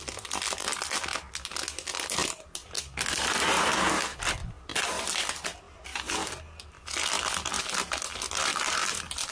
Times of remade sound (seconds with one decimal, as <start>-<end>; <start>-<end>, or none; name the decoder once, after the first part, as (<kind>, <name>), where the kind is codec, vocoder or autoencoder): none